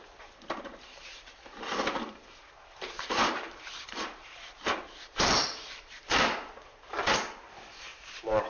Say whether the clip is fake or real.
fake